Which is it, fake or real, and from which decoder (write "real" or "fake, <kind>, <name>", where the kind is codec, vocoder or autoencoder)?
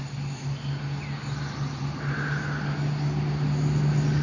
real